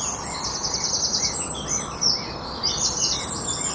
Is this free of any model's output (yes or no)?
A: yes